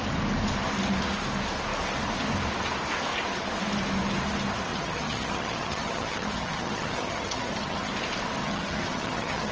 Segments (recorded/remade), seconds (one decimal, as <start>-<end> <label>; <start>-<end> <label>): 0.0-4.7 recorded; 4.7-7.9 remade; 7.9-8.4 recorded; 8.4-9.5 remade